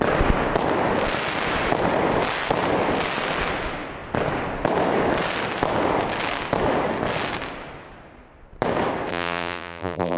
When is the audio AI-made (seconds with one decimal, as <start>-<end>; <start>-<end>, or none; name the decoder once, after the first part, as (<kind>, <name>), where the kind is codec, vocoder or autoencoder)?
9.1-10.2 (vocoder, BigVGAN v2)